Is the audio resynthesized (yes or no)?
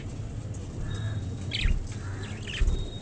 no